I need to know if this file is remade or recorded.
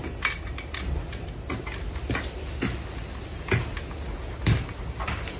recorded